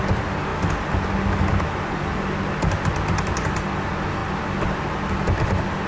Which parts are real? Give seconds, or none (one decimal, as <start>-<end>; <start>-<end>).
0.0-5.9

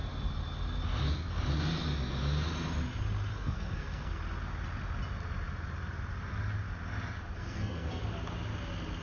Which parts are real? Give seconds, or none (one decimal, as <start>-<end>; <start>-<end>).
0.0-3.3; 4.2-7.3; 8.0-9.0

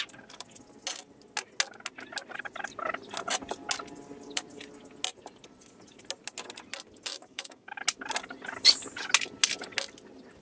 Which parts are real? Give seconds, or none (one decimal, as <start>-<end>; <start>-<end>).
0.0-7.1; 7.8-10.4

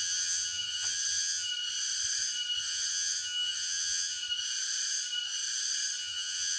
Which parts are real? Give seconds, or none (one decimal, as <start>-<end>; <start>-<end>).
1.5-2.6; 4.2-6.0

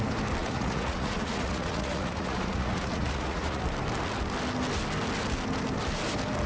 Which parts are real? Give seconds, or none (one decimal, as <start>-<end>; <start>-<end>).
0.0-0.4; 3.6-6.5

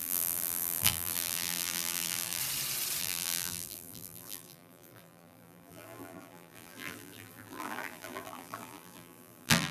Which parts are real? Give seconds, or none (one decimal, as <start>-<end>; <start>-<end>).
2.4-3.0